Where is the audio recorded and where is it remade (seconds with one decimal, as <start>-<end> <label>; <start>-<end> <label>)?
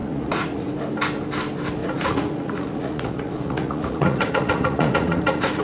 0.0-0.7 remade; 0.7-1.8 recorded; 1.8-5.6 remade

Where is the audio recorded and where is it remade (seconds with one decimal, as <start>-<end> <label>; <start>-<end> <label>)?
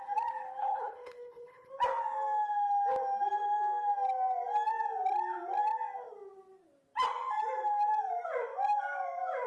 0.0-0.6 recorded; 0.6-1.7 remade; 1.7-9.5 recorded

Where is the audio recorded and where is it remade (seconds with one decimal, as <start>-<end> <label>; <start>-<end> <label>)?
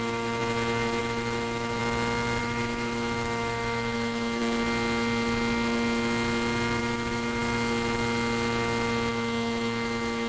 0.0-0.4 remade; 0.4-1.0 recorded; 1.0-1.8 remade; 1.8-2.4 recorded; 2.4-4.4 remade; 4.4-6.8 recorded; 6.8-7.4 remade; 7.4-9.1 recorded; 9.1-10.3 remade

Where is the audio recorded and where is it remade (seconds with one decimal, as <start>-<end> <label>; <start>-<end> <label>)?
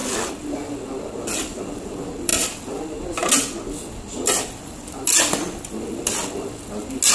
0.0-7.1 recorded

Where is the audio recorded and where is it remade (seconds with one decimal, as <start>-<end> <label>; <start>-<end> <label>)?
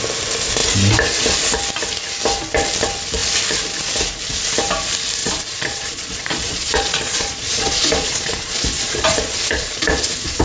0.0-5.2 recorded; 5.2-10.4 remade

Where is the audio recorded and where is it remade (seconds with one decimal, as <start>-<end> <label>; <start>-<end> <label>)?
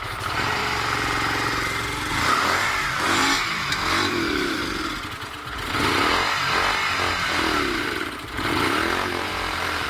0.0-0.6 remade; 0.6-2.1 recorded; 2.1-4.6 remade; 4.6-7.8 recorded; 7.8-8.5 remade; 8.5-9.2 recorded; 9.2-9.9 remade